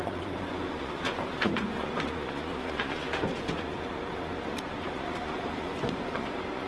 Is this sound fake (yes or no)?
yes